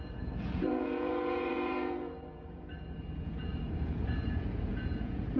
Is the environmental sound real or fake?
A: fake